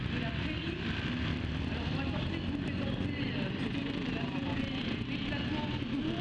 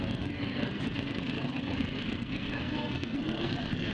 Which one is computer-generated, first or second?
second